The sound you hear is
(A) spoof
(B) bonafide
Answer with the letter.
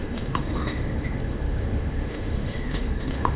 A